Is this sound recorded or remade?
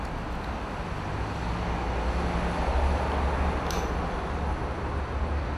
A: recorded